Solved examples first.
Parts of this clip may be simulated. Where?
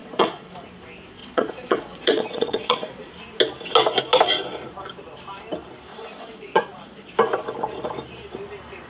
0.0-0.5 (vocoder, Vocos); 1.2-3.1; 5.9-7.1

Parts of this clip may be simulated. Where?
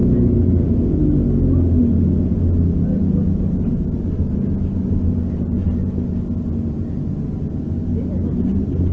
none